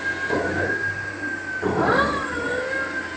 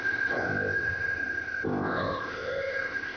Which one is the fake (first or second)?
second